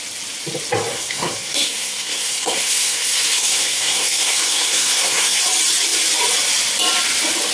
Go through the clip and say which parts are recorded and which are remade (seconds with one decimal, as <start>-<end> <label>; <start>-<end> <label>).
0.0-0.9 recorded; 0.9-5.4 remade; 5.4-7.5 recorded